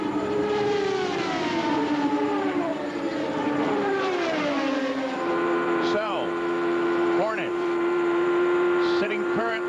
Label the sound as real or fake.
fake